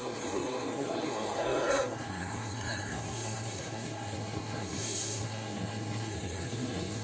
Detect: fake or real fake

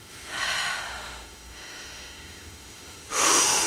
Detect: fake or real fake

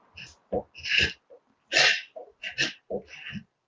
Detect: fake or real real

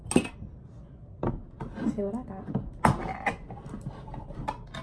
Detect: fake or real real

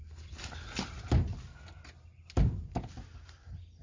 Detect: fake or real real